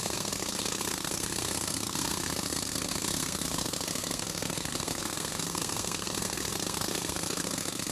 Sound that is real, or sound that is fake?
fake